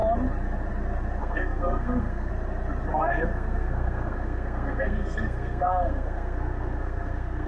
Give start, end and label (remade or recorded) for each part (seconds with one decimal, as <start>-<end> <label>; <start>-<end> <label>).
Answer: 0.0-1.2 recorded; 1.2-2.3 remade; 2.3-2.9 recorded; 2.9-7.5 remade